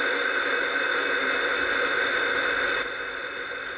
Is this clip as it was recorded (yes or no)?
yes